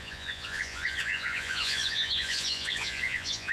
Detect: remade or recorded remade